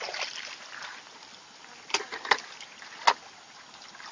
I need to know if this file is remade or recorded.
recorded